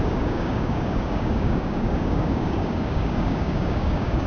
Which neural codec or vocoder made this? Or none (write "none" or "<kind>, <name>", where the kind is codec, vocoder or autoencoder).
codec, DAC